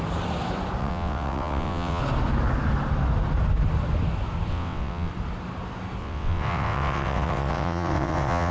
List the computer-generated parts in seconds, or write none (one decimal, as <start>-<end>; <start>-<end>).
0.8-2.0; 4.5-5.1; 6.0-8.5